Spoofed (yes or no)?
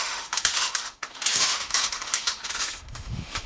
yes